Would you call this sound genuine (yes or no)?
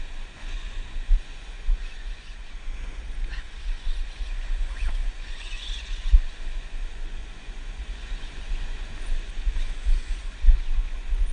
no